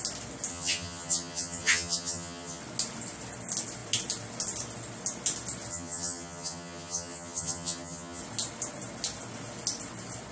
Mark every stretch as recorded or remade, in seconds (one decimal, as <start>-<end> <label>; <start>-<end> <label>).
0.0-0.5 recorded; 0.5-2.6 remade; 2.6-5.7 recorded; 5.7-8.2 remade; 8.2-10.3 recorded